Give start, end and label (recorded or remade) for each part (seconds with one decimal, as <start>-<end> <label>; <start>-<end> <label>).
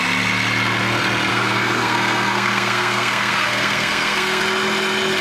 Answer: 0.0-1.3 recorded; 1.3-4.4 remade; 4.4-5.2 recorded